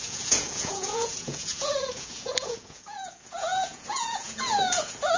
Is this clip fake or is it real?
fake